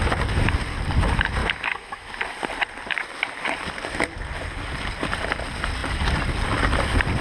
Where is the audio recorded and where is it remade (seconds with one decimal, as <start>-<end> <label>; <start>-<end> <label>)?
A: 0.0-1.4 recorded; 1.4-2.1 remade; 2.1-7.2 recorded